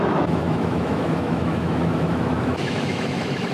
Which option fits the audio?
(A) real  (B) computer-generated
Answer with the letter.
B